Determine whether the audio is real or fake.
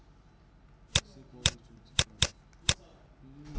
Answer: real